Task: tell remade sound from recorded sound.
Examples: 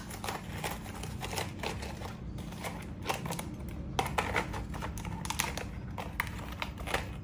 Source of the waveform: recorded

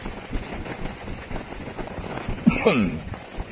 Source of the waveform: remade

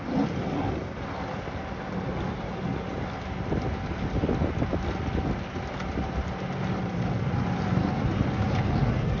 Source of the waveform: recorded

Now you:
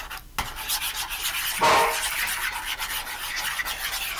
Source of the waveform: recorded